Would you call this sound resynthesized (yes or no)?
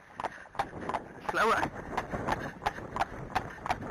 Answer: no